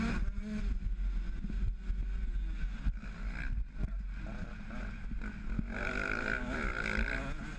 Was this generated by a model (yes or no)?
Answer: no